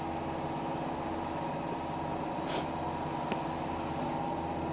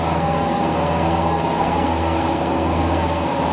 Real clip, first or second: first